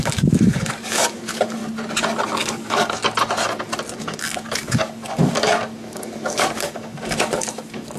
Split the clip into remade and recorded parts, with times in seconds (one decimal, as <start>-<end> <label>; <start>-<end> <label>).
0.0-1.6 remade; 1.6-2.4 recorded; 2.4-3.0 remade; 3.0-4.0 recorded; 4.0-8.0 remade